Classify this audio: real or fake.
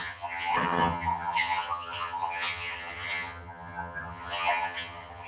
fake